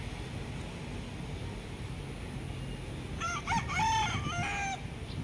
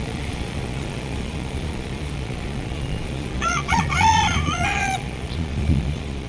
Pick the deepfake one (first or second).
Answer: second